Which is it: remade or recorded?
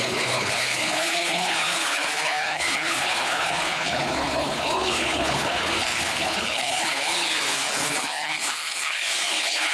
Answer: remade